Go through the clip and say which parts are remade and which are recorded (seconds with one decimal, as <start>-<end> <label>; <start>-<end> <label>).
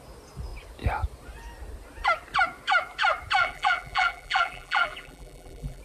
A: 0.0-3.4 recorded; 3.4-5.8 remade